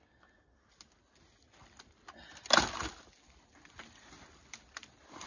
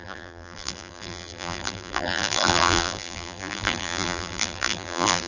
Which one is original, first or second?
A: first